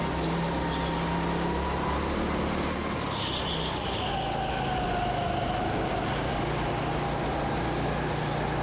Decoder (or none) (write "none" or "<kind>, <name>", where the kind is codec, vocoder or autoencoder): none